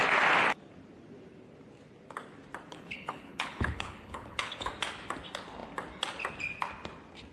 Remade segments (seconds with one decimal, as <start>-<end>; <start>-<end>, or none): 2.7-4.7